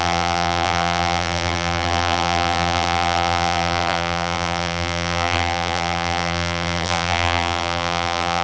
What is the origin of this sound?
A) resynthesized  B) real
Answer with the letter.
A